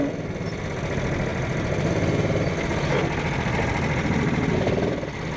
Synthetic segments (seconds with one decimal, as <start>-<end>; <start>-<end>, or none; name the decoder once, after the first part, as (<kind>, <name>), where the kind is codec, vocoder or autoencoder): none